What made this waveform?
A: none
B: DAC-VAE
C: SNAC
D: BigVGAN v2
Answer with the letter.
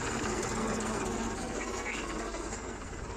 C